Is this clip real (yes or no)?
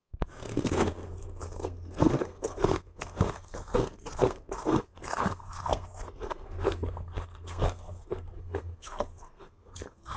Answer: no